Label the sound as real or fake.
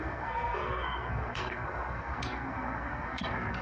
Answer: fake